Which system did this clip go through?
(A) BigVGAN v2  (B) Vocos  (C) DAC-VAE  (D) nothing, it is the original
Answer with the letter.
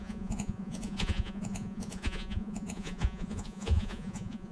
B